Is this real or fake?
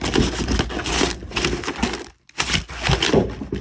real